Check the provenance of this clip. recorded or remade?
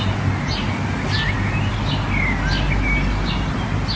recorded